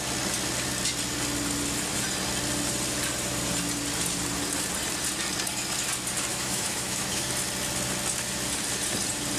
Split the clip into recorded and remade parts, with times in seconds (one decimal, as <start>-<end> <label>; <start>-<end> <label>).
0.0-6.3 recorded; 6.3-7.3 remade; 7.3-9.4 recorded